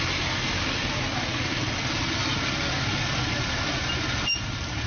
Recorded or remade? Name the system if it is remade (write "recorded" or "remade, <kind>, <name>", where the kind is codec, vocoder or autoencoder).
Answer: recorded